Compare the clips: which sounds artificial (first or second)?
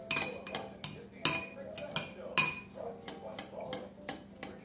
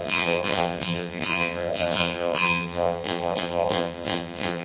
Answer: second